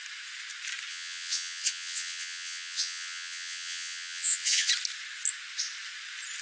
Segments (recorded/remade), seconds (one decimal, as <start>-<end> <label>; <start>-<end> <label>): 0.0-0.9 recorded; 0.9-4.7 remade; 4.7-6.4 recorded